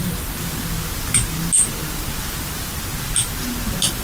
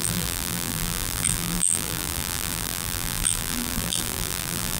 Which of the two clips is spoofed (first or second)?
second